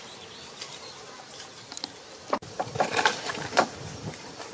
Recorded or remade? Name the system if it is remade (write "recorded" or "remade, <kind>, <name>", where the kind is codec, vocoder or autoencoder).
recorded